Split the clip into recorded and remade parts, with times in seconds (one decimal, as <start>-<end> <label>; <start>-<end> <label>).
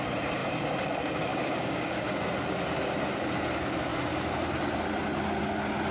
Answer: 0.0-1.3 recorded; 1.3-2.2 remade; 2.2-5.9 recorded